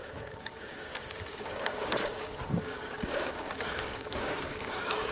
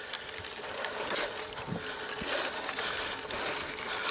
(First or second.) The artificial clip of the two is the first